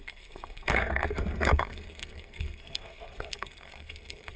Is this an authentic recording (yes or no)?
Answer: no